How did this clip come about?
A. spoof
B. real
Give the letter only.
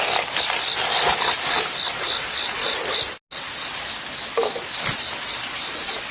B